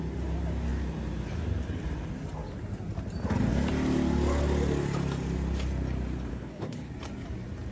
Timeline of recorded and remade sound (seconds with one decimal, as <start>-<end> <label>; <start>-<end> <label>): 0.0-6.3 recorded; 6.3-6.9 remade; 6.9-7.7 recorded